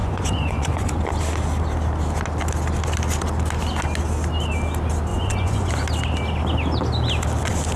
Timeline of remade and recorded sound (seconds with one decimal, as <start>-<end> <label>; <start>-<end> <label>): 0.0-1.0 remade; 1.0-5.1 recorded; 5.1-5.7 remade; 5.7-7.8 recorded